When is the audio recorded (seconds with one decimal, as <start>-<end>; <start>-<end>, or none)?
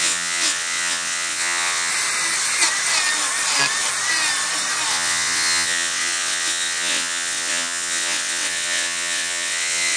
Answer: 1.9-4.9